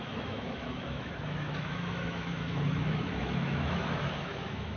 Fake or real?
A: fake